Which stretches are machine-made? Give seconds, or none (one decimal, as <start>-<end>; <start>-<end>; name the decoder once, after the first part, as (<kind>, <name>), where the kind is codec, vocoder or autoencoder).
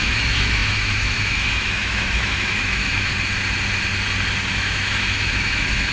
0.0-3.1 (autoencoder, DAC-VAE); 4.5-5.9